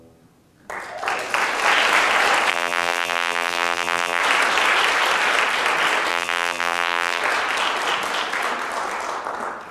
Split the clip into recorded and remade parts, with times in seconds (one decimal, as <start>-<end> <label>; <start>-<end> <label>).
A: 0.0-2.5 recorded; 2.5-4.2 remade; 4.2-6.1 recorded; 6.1-7.2 remade; 7.2-9.7 recorded